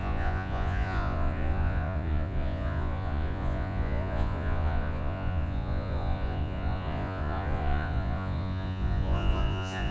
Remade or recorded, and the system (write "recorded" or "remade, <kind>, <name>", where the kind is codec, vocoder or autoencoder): remade, vocoder, Vocos